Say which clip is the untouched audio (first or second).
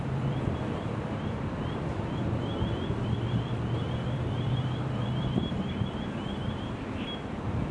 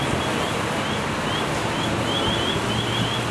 second